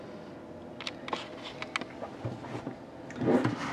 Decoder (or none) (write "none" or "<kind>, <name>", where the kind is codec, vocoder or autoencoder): none